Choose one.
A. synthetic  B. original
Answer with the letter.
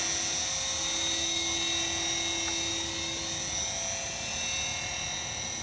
B